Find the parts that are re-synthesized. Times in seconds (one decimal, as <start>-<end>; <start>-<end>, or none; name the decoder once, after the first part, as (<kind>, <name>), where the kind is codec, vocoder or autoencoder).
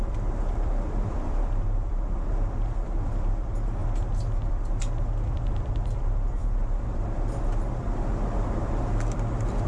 0.0-3.8 (vocoder, BigVGAN v2); 4.5-9.7